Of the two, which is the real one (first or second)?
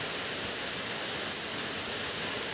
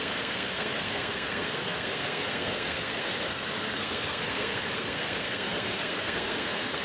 first